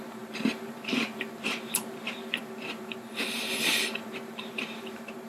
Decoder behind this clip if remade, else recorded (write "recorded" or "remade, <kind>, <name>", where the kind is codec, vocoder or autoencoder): remade, vocoder, BigVGAN v2